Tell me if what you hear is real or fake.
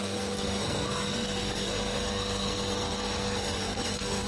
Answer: fake